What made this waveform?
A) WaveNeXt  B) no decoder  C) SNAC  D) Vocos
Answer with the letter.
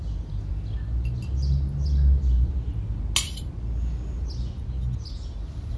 B